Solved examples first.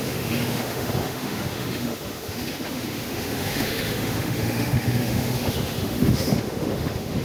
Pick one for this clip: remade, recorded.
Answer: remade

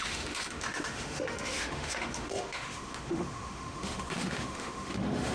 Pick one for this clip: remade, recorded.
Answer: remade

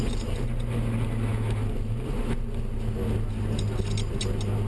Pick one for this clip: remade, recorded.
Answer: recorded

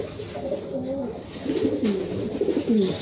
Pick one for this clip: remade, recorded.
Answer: recorded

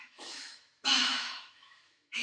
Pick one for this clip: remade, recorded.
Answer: remade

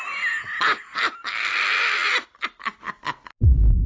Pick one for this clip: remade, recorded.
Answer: recorded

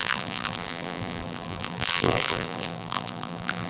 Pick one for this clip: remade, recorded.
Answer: remade